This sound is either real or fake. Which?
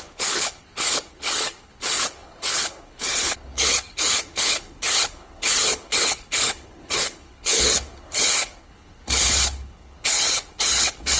fake